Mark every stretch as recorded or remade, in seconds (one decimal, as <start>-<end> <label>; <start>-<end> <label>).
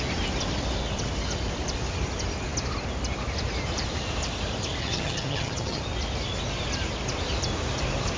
0.0-4.8 recorded; 4.8-5.8 remade; 5.8-8.2 recorded